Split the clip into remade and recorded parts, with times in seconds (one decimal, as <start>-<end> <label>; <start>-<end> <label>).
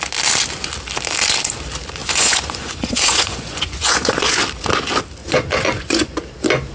0.0-2.0 recorded; 2.0-4.4 remade; 4.4-5.2 recorded; 5.2-6.2 remade; 6.2-6.7 recorded